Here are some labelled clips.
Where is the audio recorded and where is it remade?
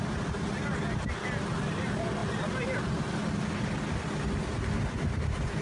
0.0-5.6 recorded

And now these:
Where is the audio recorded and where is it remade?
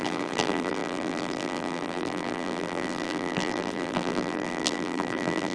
0.0-5.5 remade